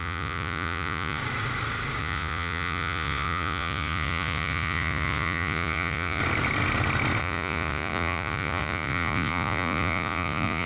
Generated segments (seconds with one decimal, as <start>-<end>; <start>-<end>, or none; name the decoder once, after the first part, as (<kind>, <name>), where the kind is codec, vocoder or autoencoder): 0.0-1.2 (vocoder, Vocos); 2.0-6.2; 7.2-10.7

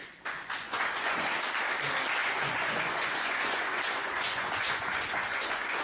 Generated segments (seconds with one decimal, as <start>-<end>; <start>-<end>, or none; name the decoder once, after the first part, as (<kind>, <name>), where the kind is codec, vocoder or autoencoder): 0.0-1.4 (vocoder, Vocos); 2.2-5.8

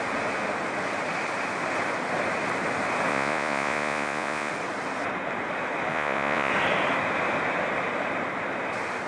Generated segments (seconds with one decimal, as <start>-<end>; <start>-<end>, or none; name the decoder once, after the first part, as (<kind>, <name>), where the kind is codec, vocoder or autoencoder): 3.1-4.5 (vocoder, Vocos); 5.9-6.5

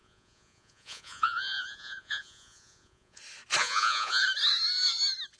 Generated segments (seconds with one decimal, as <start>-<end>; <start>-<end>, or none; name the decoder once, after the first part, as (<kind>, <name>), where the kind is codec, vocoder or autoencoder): 0.0-3.2 (vocoder, Vocos); 3.6-4.2

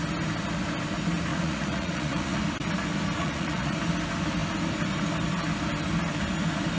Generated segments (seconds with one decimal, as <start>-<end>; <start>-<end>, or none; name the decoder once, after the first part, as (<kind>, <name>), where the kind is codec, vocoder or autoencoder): 1.3-2.4 (vocoder, Vocos); 3.2-3.8

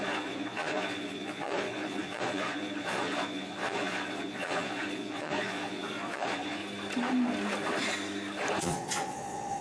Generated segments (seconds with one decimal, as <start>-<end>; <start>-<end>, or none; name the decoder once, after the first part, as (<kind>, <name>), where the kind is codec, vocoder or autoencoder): 0.0-6.6 (vocoder, Vocos); 8.6-9.6

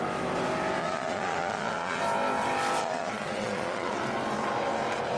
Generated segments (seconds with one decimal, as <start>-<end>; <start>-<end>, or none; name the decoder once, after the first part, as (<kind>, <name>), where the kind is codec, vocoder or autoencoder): 0.8-2.0 (vocoder, Vocos); 2.8-4.0